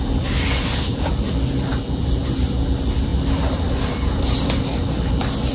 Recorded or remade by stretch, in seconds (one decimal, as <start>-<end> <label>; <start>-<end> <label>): 0.0-5.5 recorded